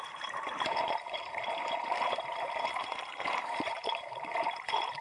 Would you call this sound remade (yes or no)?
yes